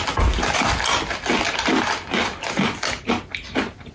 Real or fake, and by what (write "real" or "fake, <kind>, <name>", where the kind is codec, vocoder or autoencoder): real